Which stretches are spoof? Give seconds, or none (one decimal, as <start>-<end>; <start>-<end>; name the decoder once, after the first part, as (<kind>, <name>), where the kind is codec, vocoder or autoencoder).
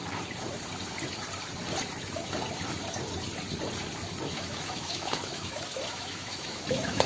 4.3-7.1 (autoencoder, DAC-VAE)